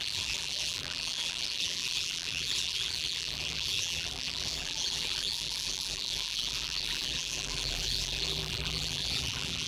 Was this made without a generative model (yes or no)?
no